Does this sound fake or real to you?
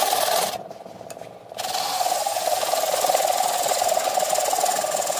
real